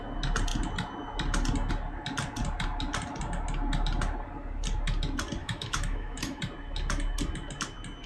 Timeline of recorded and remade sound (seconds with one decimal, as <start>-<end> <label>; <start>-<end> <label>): 0.0-5.4 recorded; 5.4-6.4 remade; 6.4-8.1 recorded